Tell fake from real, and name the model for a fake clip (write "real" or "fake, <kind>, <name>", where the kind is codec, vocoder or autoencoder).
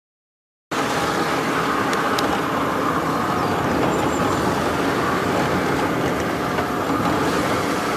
real